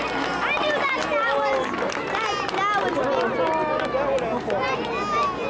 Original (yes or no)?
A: yes